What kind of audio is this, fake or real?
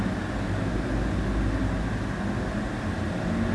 real